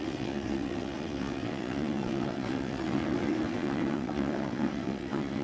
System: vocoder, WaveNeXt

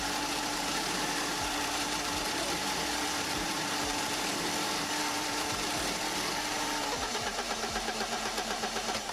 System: vocoder, BigVGAN v2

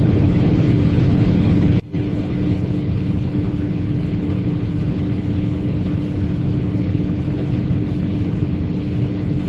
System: codec, HILCodec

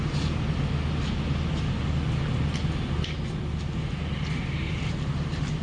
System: none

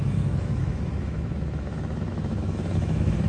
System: autoencoder, DAC-VAE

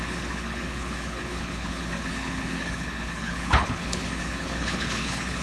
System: codec, HILCodec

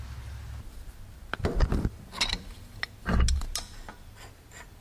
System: none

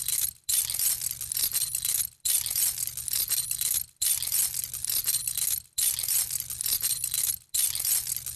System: none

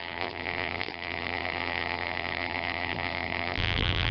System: vocoder, BigVGAN v2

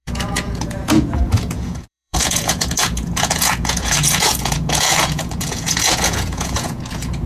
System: vocoder, Vocos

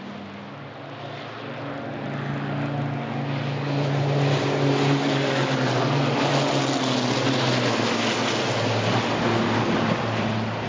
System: none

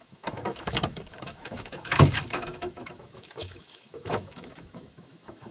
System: autoencoder, DAC-VAE